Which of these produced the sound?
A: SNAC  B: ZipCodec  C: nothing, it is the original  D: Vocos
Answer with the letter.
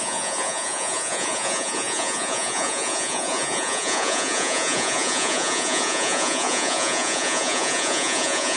D